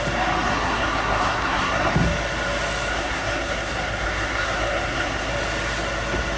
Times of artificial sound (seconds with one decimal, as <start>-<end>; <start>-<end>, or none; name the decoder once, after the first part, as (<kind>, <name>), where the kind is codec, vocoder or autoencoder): 0.5-1.9 (codec, SNAC); 2.9-5.3